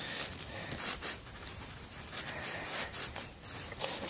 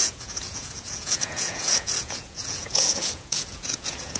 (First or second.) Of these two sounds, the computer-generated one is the second